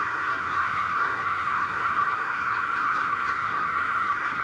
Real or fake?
fake